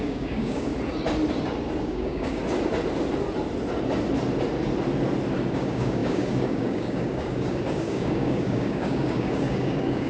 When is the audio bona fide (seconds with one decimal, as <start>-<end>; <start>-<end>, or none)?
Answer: 0.7-1.8; 2.4-5.5